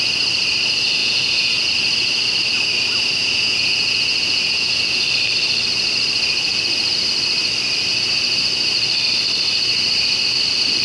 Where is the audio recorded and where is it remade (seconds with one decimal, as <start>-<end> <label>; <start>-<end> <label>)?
0.0-1.0 recorded; 1.0-1.7 remade; 1.7-3.2 recorded; 3.2-5.0 remade; 5.0-10.8 recorded